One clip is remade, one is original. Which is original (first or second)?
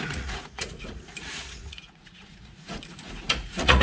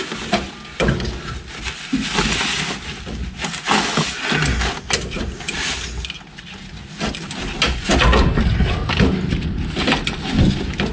second